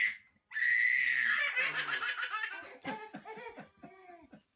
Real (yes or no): yes